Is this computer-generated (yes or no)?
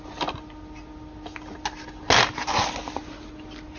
no